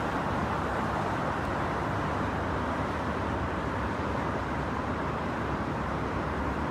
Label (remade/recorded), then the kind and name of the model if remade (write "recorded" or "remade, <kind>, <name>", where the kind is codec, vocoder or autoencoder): remade, vocoder, BigVGAN v2